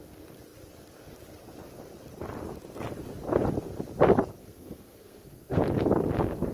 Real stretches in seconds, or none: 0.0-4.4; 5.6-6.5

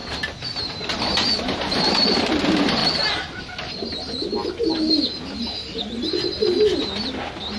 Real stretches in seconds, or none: 0.0-1.4; 2.8-3.4; 4.4-7.6

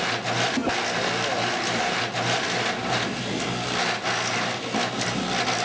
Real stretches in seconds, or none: 0.0-5.6